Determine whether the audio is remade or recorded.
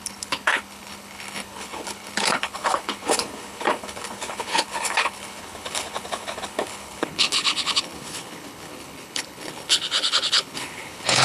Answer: remade